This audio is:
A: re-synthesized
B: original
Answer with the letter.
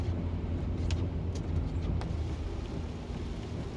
B